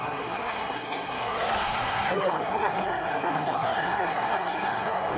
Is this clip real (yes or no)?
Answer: no